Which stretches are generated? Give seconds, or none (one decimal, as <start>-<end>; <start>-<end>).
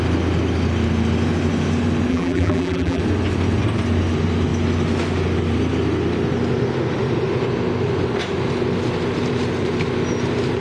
2.1-3.0